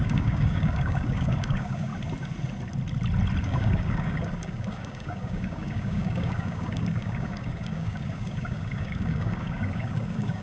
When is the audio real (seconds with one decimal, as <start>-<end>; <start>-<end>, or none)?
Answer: 1.9-3.4